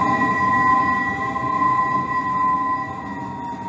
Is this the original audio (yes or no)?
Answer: yes